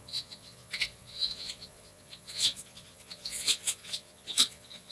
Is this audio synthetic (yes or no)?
yes